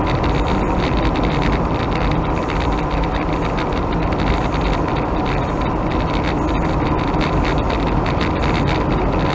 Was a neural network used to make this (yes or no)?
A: no